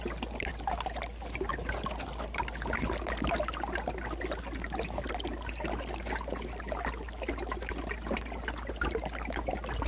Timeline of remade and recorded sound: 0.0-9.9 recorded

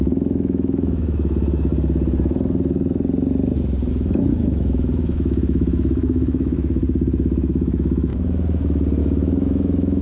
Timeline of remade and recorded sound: 0.0-1.7 remade; 1.7-3.9 recorded; 3.9-6.8 remade; 6.8-7.5 recorded; 7.5-8.1 remade; 8.1-9.0 recorded; 9.0-10.0 remade

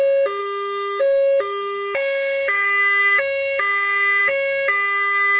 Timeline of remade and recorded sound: 0.0-0.4 recorded; 0.4-3.6 remade; 3.6-4.2 recorded; 4.2-5.4 remade

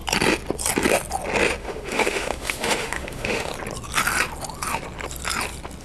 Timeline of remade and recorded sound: 0.0-1.6 recorded; 1.6-3.5 remade; 3.5-5.8 recorded

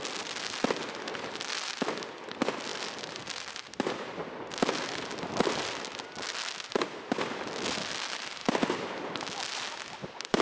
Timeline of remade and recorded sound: 0.0-10.4 recorded

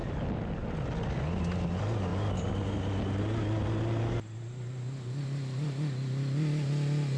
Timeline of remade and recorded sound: 0.0-7.2 recorded

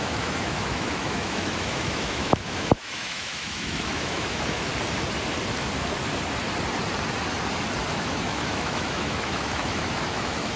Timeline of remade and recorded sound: 0.0-4.7 remade; 4.7-7.9 recorded; 7.9-10.6 remade

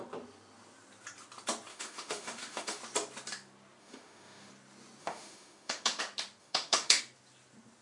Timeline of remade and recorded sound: 0.0-1.7 recorded; 1.7-2.8 remade; 2.8-3.8 recorded; 3.8-4.5 remade; 4.5-5.0 recorded; 5.0-6.0 remade; 6.0-6.4 recorded; 6.4-7.0 remade; 7.0-7.8 recorded